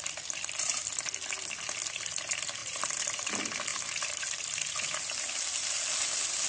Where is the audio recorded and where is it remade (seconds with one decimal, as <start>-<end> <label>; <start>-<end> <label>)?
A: 0.0-2.6 recorded; 2.6-3.3 remade; 3.3-3.7 recorded; 3.7-4.2 remade; 4.2-6.5 recorded

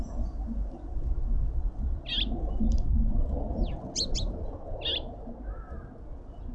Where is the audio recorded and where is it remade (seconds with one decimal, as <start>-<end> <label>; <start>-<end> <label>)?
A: 0.0-6.5 recorded

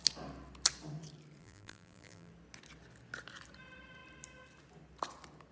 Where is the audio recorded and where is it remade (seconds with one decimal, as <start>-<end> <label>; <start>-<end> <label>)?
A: 0.0-1.4 recorded; 1.4-2.3 remade; 2.3-5.5 recorded

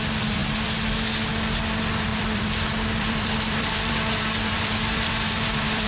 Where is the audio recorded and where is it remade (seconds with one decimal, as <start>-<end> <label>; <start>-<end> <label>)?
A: 0.0-2.1 recorded; 2.1-5.9 remade

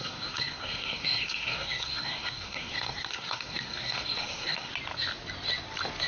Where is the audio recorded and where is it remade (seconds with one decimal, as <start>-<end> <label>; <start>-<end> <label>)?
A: 0.0-4.7 remade; 4.7-6.1 recorded

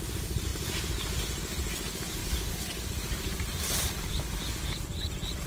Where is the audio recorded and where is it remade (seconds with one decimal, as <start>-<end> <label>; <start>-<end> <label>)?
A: 0.0-5.5 recorded